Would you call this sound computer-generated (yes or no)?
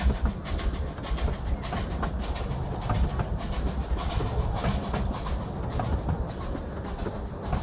no